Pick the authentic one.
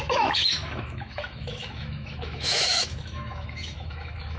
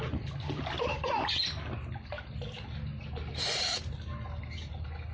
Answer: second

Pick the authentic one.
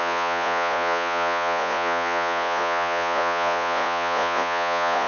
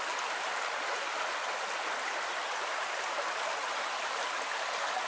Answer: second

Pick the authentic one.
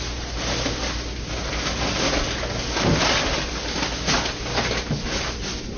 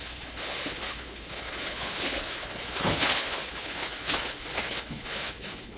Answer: first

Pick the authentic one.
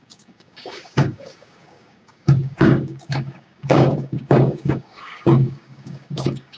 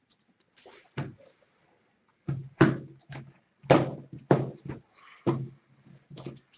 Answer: second